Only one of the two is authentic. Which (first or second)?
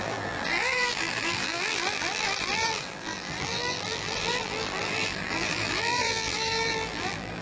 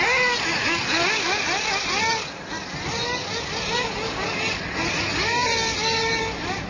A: second